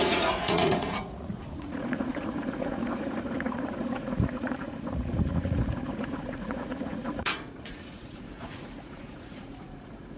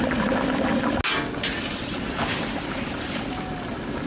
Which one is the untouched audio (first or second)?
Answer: second